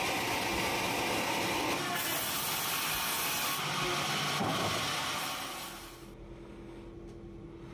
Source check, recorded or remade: recorded